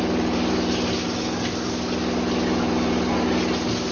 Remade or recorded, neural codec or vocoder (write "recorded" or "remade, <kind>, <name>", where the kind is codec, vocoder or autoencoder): recorded